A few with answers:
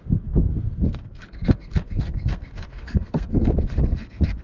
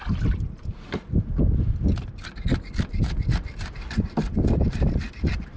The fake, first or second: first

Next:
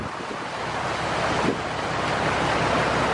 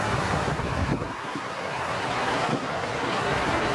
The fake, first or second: second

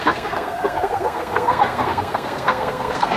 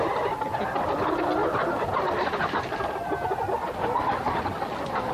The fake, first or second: first